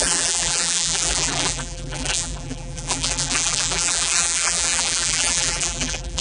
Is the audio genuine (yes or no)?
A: no